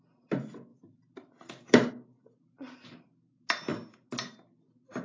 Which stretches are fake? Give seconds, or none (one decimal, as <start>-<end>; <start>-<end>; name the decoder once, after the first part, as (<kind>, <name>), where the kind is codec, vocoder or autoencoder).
none